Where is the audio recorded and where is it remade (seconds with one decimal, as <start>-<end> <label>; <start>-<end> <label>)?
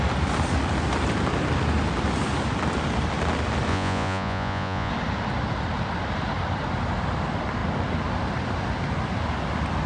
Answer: 0.0-3.7 recorded; 3.7-4.9 remade; 4.9-9.9 recorded